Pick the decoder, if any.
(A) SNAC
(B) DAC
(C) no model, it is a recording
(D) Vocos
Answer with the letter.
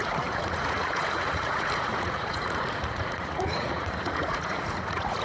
D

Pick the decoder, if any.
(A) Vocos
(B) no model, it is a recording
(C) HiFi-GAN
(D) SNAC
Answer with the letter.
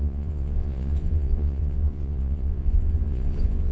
A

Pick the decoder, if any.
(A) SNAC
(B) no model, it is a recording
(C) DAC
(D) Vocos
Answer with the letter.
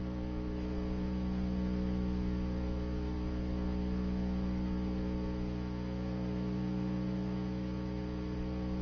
D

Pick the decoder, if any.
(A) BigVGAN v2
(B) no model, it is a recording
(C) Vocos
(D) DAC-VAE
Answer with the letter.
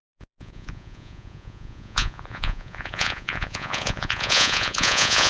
C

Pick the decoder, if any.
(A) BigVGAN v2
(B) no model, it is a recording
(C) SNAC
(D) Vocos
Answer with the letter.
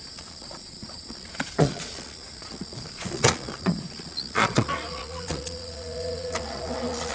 D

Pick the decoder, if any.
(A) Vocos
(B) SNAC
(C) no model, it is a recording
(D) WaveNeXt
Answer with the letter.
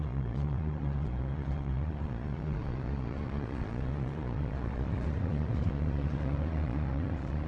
A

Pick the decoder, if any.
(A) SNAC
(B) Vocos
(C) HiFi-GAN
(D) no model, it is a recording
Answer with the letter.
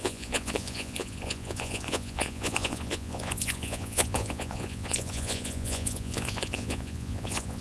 B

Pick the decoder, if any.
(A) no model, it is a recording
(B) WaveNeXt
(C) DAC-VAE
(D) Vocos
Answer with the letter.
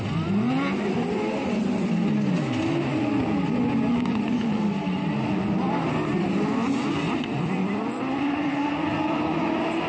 A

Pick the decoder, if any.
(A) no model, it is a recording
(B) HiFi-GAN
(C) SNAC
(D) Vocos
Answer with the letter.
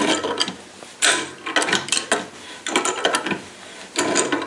A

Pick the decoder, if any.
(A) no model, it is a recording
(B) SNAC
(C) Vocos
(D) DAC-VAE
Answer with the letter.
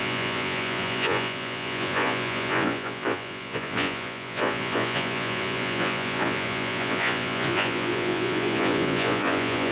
C